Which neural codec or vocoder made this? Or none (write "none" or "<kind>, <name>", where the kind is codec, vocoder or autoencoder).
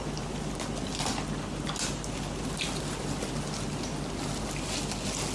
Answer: none